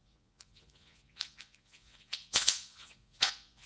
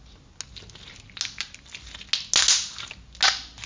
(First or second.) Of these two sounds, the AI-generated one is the first